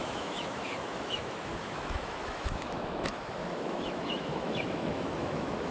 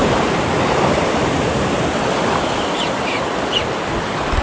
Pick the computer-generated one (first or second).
first